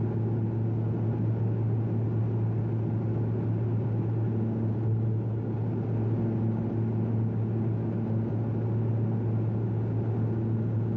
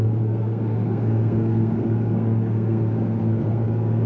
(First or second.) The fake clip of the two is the second